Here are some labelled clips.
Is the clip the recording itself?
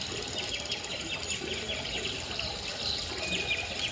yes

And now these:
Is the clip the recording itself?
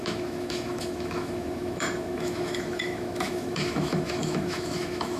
no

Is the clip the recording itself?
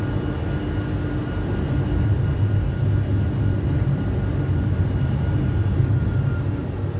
yes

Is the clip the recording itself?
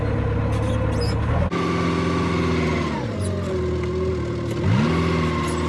yes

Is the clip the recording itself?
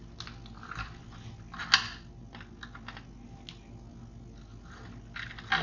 yes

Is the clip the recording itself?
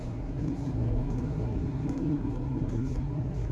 no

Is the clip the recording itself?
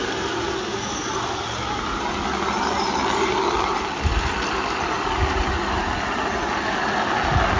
yes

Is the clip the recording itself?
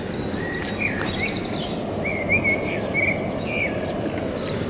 yes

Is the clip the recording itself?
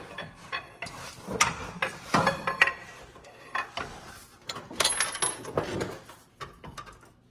yes